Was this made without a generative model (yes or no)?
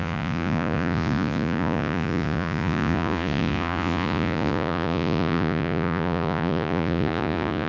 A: no